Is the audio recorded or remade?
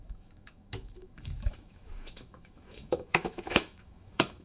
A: remade